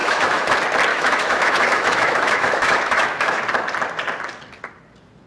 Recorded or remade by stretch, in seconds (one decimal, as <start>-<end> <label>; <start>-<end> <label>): 0.0-0.5 remade; 0.5-0.9 recorded; 0.9-3.4 remade; 3.4-5.3 recorded